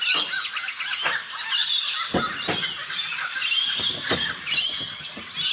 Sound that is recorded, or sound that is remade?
recorded